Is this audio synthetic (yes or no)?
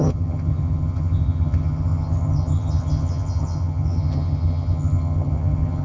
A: yes